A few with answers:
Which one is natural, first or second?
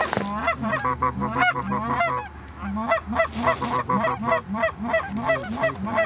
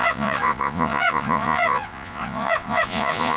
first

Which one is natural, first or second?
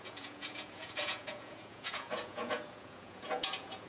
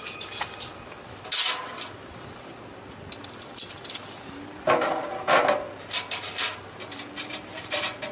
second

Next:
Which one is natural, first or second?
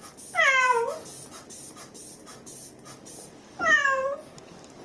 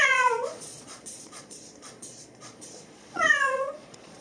first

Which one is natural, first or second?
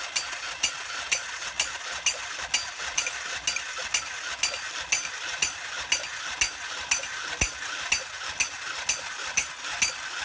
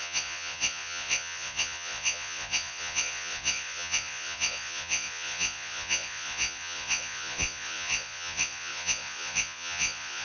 first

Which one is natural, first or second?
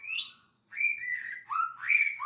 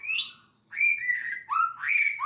second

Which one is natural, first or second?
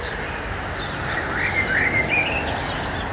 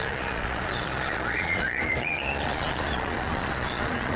first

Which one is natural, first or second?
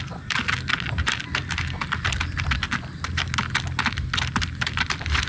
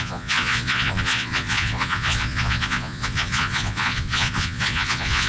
first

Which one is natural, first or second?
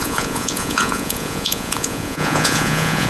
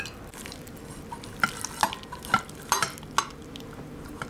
second